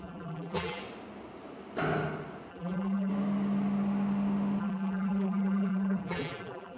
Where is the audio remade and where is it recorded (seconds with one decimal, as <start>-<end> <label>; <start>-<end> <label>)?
0.0-0.8 remade; 0.8-2.5 recorded; 2.5-3.1 remade; 3.1-4.6 recorded; 4.6-6.8 remade